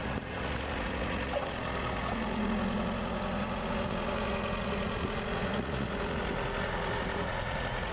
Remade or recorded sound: remade